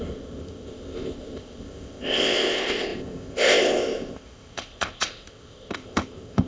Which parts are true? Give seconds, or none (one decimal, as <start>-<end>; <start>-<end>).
none

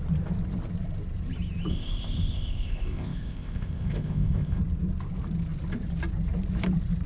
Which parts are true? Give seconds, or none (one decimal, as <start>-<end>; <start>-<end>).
0.0-1.7; 4.6-7.1

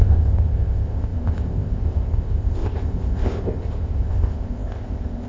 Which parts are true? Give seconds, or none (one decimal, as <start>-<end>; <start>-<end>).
none

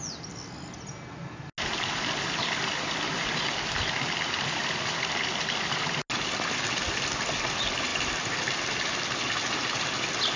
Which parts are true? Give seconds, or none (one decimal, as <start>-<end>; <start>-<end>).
0.0-10.4